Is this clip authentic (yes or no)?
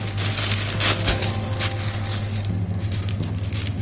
yes